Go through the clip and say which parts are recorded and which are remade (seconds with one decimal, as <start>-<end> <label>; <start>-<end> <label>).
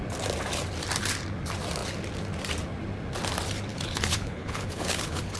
0.0-3.7 recorded; 3.7-5.4 remade